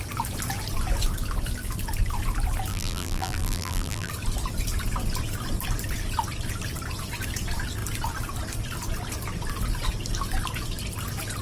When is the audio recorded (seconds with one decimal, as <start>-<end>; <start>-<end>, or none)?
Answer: 0.0-2.7; 4.1-11.4